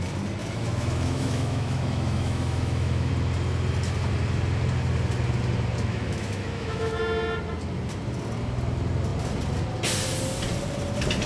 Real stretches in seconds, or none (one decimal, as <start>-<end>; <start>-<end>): 0.0-0.4; 3.1-5.9; 7.0-11.3